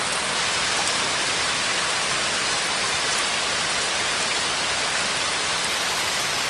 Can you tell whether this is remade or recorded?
recorded